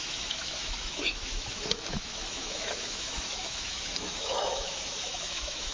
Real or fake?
fake